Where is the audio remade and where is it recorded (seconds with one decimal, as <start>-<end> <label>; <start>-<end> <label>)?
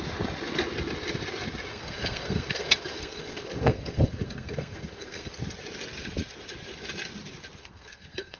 0.0-1.7 recorded; 1.7-5.4 remade; 5.4-7.6 recorded; 7.6-8.4 remade